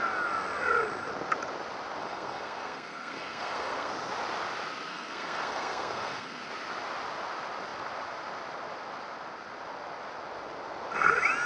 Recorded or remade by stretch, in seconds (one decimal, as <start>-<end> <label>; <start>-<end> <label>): 0.0-2.0 recorded; 2.0-3.9 remade; 3.9-4.9 recorded; 4.9-6.4 remade; 6.4-11.5 recorded